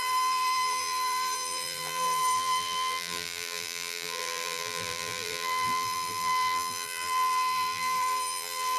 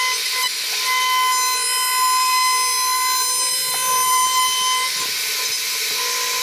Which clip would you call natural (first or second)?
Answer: second